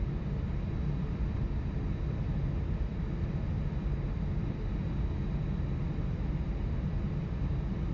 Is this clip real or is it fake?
real